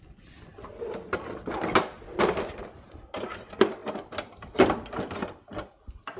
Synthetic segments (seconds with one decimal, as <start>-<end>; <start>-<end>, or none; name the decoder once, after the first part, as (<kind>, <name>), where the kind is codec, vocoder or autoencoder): none